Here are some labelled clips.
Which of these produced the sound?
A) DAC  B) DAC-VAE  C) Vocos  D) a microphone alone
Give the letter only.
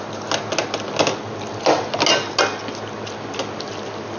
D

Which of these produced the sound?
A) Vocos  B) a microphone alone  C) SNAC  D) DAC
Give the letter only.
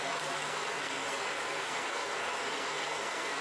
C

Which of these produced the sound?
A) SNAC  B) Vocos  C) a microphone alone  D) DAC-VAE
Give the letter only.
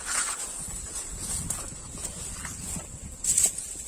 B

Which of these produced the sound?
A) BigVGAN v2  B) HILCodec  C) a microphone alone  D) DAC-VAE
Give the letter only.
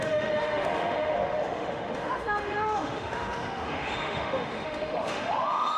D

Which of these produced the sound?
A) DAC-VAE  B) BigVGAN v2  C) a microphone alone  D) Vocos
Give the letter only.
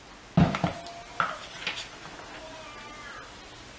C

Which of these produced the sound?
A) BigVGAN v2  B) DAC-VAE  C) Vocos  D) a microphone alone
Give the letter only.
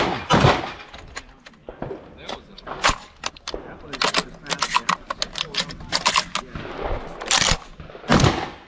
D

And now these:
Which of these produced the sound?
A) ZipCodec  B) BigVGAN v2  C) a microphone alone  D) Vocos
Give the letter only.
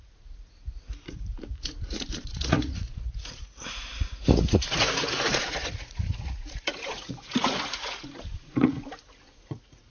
D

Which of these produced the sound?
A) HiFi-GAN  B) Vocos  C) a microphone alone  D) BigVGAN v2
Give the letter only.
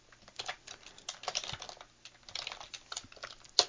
C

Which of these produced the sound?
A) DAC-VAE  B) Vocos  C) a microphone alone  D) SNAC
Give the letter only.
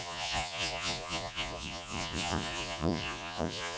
B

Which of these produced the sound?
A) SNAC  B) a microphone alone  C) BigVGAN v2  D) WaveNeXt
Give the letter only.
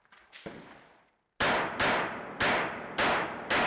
B